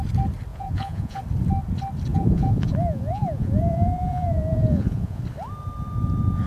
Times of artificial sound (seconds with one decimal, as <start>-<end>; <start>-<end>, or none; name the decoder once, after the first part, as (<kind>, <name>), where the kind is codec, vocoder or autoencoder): 0.5-1.2 (vocoder, Vocos); 2.1-5.2